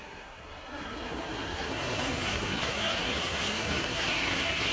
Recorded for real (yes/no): no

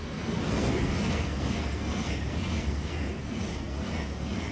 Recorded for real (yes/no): no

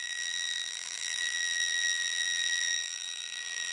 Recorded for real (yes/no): no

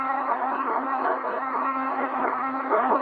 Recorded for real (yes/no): no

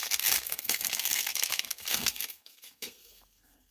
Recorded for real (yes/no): no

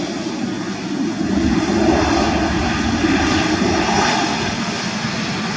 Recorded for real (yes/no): yes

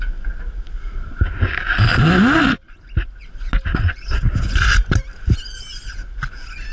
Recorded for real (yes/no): yes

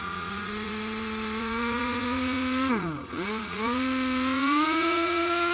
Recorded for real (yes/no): no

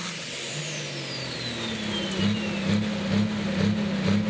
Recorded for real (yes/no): yes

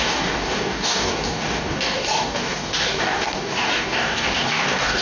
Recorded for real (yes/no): no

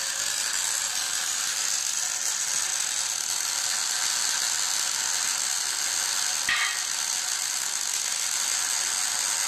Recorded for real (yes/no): yes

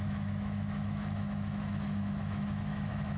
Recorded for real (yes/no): no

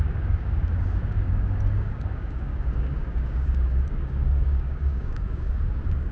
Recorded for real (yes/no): no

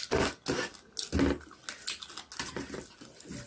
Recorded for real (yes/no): yes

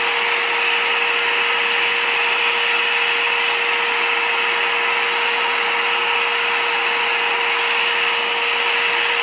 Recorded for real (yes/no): yes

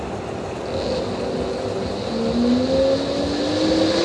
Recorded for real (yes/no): yes